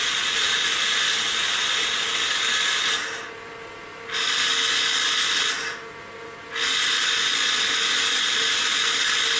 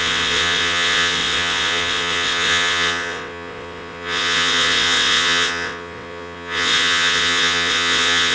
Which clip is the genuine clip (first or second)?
first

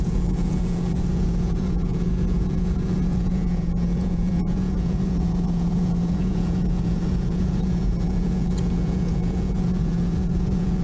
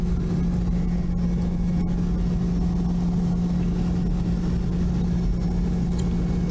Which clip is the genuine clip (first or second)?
second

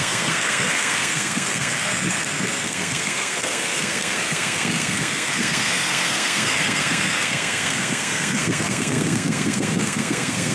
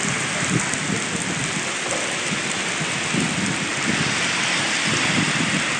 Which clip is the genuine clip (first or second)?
second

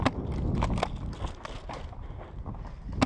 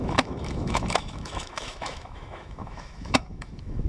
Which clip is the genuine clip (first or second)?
first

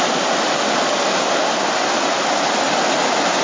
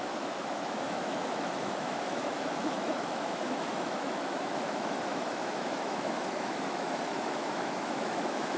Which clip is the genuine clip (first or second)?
first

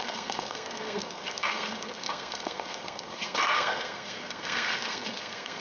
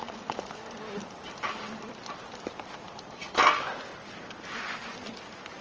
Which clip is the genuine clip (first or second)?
second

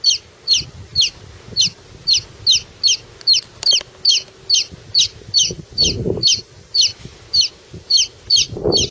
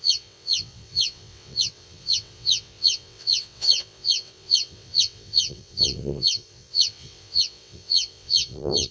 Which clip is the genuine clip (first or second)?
first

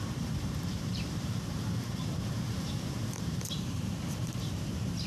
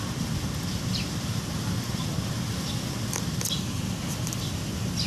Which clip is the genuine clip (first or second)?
second